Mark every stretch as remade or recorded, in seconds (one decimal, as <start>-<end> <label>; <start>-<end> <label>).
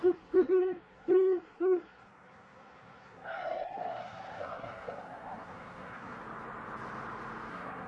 0.0-6.2 remade; 6.2-7.5 recorded; 7.5-7.9 remade